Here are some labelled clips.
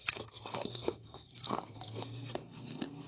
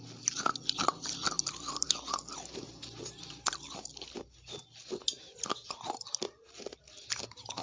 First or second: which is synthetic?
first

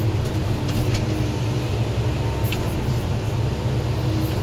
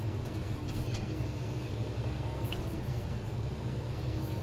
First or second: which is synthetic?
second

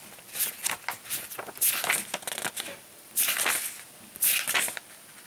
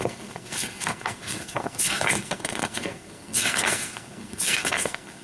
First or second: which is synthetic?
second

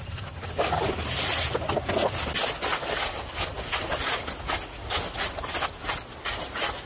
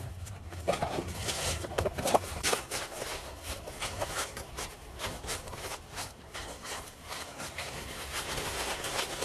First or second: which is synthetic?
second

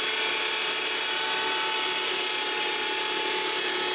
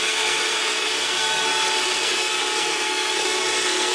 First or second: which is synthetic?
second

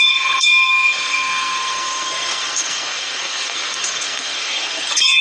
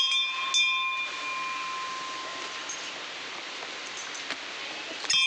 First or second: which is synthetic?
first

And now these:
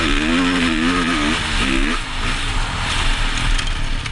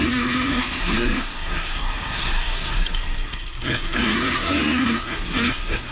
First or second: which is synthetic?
second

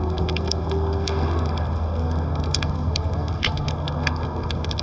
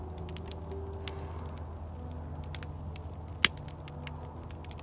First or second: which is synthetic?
first